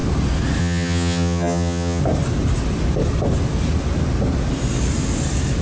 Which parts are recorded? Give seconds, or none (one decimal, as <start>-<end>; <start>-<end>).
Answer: 0.0-0.6; 2.0-5.6